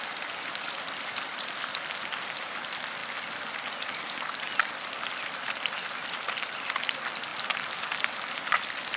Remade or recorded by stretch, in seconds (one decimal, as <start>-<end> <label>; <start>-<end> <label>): 0.0-3.0 remade; 3.0-4.7 recorded; 4.7-7.3 remade; 7.3-8.5 recorded; 8.5-9.0 remade